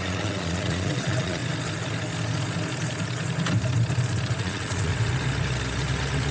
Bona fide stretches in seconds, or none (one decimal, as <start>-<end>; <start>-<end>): 1.4-4.4; 4.9-6.3